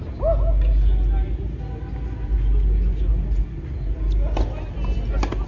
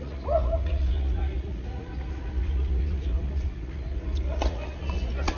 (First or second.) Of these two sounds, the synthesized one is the second